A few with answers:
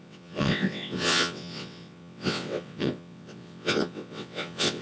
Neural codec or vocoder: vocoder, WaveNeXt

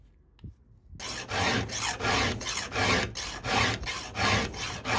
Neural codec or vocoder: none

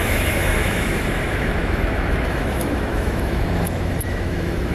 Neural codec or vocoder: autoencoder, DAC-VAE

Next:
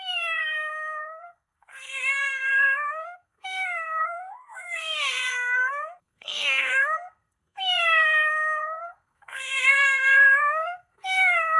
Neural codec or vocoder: codec, SNAC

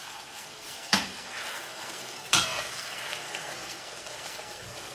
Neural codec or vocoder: codec, SNAC